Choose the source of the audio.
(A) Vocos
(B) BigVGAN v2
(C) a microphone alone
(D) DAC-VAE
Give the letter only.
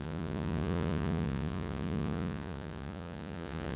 A